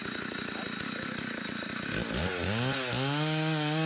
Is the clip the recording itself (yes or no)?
yes